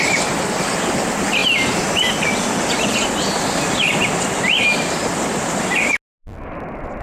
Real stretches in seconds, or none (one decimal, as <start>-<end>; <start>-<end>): 0.0-7.0